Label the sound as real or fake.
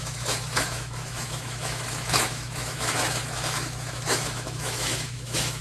fake